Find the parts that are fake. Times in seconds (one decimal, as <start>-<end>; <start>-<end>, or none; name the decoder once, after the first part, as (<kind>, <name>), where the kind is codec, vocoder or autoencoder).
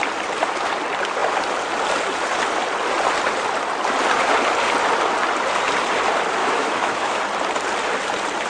6.4-7.2 (autoencoder, DAC-VAE)